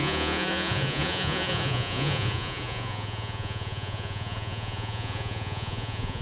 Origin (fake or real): fake